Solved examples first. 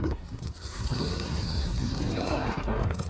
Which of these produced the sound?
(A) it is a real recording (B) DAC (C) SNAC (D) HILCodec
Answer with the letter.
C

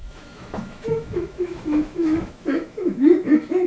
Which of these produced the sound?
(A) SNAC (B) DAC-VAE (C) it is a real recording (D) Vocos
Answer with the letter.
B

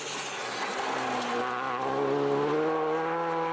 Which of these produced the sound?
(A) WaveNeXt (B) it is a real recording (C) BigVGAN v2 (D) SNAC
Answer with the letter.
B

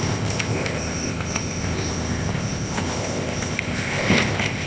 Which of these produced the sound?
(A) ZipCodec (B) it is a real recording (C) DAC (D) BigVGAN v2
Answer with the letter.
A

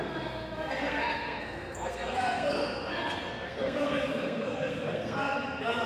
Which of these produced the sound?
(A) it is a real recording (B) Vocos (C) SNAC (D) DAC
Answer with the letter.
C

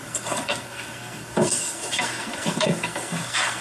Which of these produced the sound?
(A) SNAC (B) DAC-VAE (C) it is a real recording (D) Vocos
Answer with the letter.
A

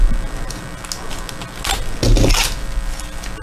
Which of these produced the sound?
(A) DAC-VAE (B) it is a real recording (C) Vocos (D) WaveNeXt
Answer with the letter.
B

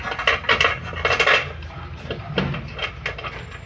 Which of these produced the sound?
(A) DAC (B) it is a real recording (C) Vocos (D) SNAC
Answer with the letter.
B